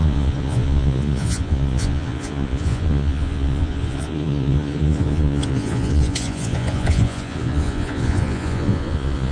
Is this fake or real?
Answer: fake